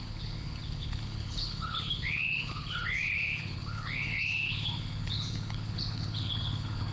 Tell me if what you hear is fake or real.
fake